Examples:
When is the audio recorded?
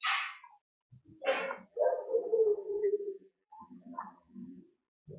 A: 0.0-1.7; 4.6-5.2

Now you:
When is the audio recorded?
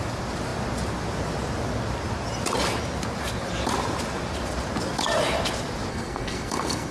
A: 0.0-5.9